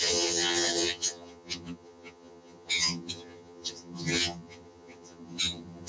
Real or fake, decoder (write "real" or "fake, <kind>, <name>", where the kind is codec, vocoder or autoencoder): fake, vocoder, HiFi-GAN